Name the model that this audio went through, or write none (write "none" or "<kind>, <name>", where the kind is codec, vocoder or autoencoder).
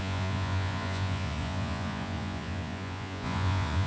vocoder, Vocos